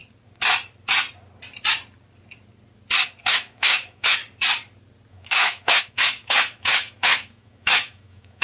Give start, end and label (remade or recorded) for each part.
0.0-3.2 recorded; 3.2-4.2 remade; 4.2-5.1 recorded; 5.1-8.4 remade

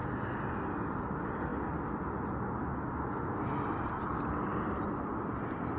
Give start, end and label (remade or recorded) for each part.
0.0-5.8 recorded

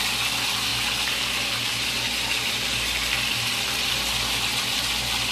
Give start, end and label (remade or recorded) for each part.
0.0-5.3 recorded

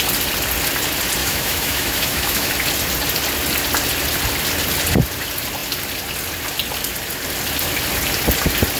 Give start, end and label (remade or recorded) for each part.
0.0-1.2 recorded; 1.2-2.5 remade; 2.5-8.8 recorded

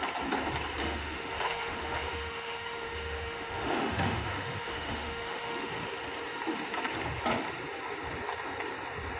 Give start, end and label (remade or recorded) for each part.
0.0-0.8 recorded; 0.8-5.7 remade; 5.7-9.2 recorded

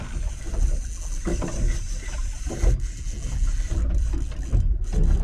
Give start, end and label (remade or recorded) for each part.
0.0-5.2 recorded

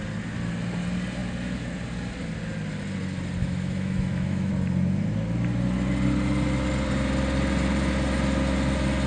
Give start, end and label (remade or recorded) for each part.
0.0-3.4 recorded; 3.4-4.5 remade; 4.5-9.1 recorded